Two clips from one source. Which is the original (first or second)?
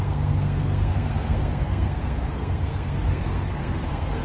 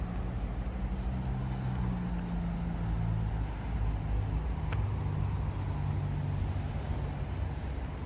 second